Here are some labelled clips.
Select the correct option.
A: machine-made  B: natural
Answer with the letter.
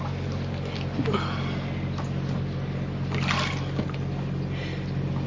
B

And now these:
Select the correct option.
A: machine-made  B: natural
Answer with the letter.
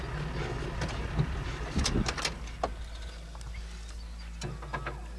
B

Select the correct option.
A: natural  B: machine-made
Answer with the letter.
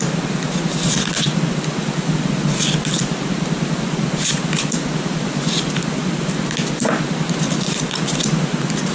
A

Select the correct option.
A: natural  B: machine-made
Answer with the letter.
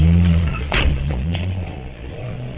B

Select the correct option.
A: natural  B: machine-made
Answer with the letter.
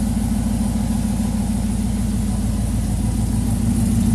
A